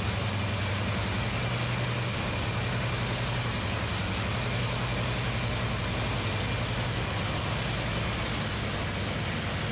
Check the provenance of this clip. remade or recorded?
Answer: recorded